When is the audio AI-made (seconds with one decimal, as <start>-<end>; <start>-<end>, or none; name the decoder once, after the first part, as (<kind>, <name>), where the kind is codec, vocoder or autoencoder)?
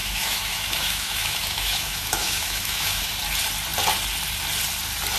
0.0-3.1 (autoencoder, DAC-VAE)